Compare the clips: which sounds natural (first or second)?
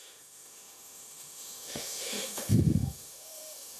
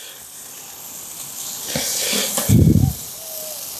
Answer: second